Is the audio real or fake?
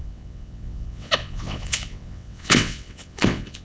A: fake